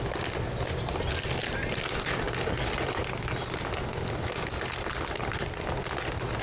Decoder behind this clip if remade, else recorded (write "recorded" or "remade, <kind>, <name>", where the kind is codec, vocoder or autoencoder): recorded